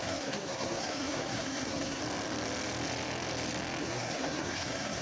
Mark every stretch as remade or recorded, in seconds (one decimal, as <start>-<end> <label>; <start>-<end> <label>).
0.0-2.0 remade; 2.0-3.8 recorded; 3.8-5.0 remade